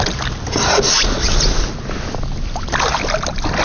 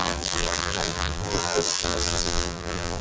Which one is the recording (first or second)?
first